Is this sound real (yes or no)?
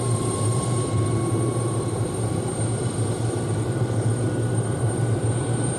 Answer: no